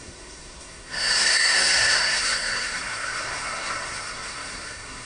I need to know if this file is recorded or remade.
remade